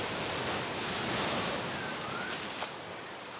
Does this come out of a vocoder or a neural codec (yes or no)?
no